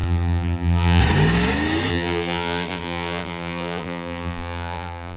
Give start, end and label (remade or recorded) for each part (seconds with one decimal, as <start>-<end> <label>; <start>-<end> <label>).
0.0-1.0 remade; 1.0-1.9 recorded; 1.9-5.2 remade